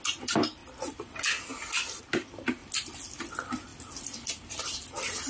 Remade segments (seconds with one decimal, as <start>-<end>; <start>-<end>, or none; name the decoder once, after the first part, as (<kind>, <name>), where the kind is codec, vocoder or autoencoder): none